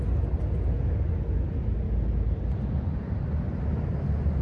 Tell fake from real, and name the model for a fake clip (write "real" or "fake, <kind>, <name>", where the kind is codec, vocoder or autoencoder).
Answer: real